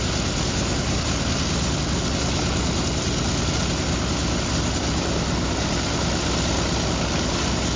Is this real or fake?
real